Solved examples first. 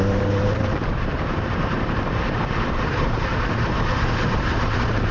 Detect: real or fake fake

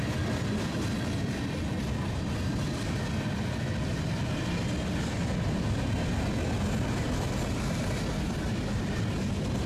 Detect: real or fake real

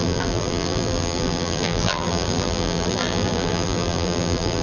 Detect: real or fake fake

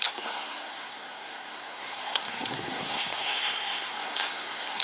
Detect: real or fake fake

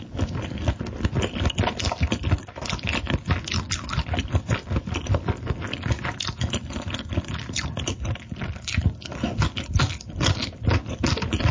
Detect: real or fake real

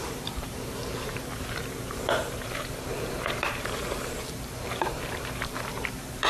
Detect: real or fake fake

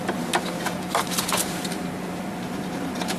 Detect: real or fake fake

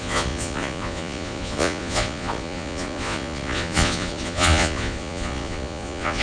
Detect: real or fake fake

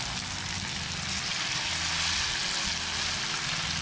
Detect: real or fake real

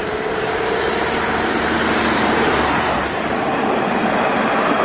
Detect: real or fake fake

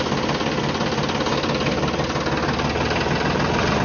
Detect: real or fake real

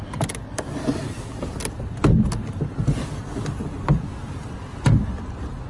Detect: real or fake real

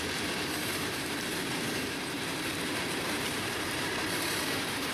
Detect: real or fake fake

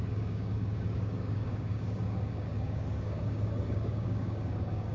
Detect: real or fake fake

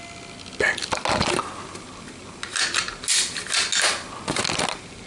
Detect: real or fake real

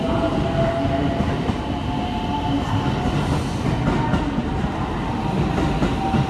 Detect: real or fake real